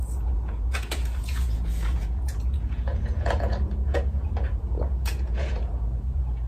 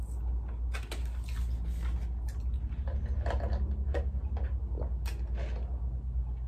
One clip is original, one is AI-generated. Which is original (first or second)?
second